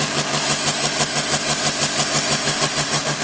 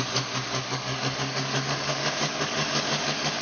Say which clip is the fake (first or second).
second